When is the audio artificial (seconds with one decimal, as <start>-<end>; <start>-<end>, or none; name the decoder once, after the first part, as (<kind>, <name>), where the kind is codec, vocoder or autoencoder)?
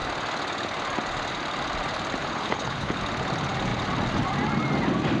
2.2-3.0 (codec, HILCodec)